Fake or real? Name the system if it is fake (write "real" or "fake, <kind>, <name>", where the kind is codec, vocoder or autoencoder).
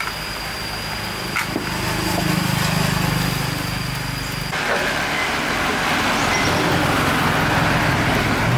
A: real